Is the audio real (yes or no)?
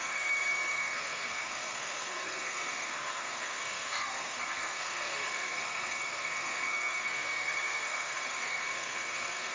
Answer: no